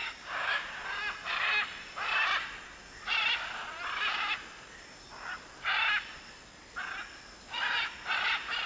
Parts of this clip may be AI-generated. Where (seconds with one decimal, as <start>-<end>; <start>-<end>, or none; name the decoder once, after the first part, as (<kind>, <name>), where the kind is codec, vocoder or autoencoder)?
0.0-0.8 (codec, DAC)